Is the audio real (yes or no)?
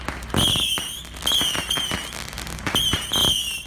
yes